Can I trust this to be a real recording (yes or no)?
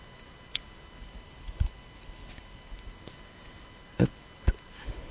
yes